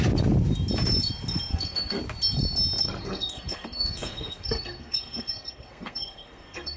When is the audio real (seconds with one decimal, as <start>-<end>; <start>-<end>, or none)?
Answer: 0.0-1.5; 2.0-2.8